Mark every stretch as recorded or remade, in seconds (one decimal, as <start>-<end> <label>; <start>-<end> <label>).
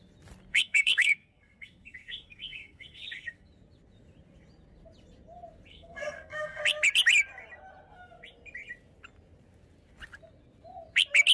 0.0-0.5 recorded; 0.5-3.5 remade; 3.5-5.7 recorded; 5.7-6.6 remade; 6.6-11.3 recorded